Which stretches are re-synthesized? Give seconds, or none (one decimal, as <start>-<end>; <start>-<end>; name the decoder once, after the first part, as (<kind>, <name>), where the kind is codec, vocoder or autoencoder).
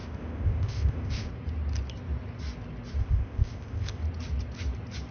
0.0-1.3 (codec, ZipCodec); 3.0-4.0